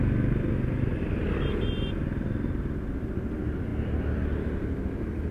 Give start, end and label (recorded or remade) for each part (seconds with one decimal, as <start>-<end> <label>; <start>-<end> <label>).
0.0-5.3 recorded